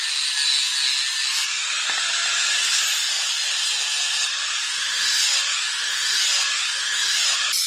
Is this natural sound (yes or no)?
yes